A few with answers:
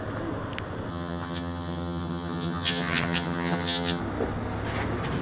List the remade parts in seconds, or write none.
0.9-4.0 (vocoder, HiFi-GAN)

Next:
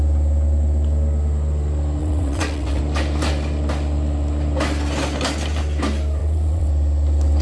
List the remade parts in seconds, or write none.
2.0-2.8 (vocoder, WaveNeXt); 6.2-6.7